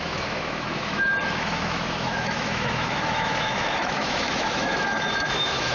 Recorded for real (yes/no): no